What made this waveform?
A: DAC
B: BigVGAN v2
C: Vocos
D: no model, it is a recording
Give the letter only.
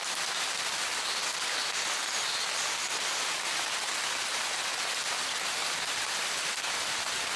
D